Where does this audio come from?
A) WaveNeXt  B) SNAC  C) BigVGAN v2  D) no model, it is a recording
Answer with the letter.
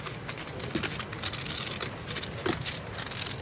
D